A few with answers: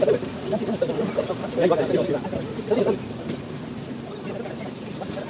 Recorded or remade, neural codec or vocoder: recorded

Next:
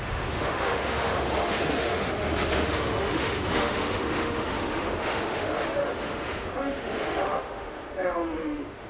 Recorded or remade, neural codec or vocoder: remade, autoencoder, DAC-VAE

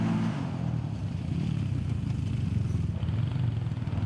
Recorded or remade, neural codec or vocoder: recorded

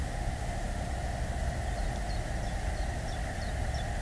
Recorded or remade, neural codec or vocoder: recorded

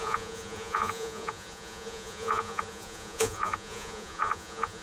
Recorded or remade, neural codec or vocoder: remade, vocoder, Vocos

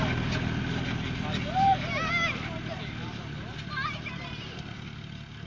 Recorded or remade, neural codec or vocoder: recorded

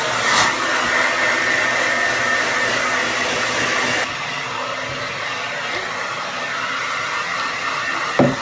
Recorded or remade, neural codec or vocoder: recorded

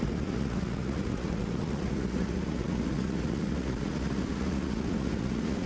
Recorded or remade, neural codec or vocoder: remade, vocoder, Vocos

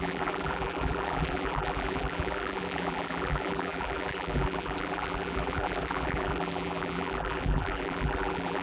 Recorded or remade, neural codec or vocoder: remade, vocoder, BigVGAN v2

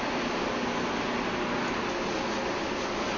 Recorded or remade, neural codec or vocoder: recorded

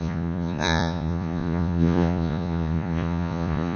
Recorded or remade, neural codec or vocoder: remade, vocoder, Vocos